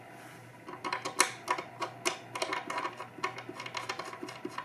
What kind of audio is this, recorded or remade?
recorded